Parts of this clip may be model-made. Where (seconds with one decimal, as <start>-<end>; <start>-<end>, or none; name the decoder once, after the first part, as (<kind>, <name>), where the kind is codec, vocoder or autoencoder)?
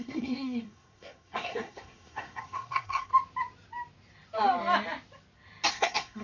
0.0-3.1 (codec, SNAC); 5.7-6.2